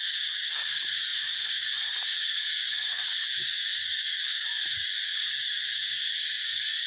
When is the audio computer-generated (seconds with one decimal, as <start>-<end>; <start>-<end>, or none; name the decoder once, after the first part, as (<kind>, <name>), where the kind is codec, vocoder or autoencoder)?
0.0-6.9 (codec, DAC)